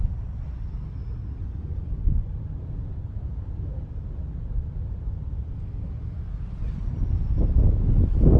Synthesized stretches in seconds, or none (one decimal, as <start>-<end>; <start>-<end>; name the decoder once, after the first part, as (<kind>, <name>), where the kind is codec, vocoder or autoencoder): 1.4-2.0 (vocoder, Vocos)